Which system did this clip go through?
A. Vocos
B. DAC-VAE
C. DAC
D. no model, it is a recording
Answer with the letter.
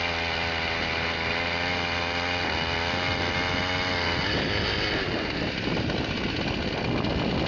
D